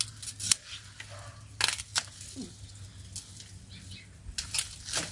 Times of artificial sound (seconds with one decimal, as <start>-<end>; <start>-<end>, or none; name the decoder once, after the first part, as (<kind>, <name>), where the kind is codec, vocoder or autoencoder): none